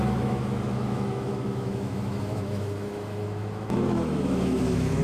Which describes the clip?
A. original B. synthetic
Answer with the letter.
B